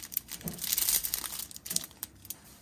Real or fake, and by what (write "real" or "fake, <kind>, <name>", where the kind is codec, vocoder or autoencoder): real